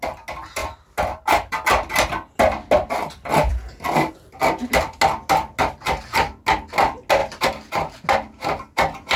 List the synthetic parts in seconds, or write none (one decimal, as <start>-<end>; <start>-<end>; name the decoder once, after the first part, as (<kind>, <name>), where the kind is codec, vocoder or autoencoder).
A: none